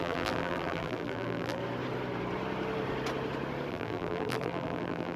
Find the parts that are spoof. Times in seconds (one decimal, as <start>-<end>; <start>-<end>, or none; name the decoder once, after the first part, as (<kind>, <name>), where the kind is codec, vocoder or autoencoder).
0.0-1.6 (vocoder, BigVGAN v2); 3.7-5.2